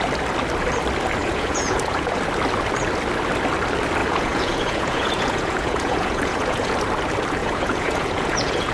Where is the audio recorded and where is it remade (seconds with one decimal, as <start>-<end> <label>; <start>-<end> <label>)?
0.0-1.2 recorded; 1.2-2.2 remade; 2.2-4.0 recorded; 4.0-6.8 remade; 6.8-7.4 recorded; 7.4-8.7 remade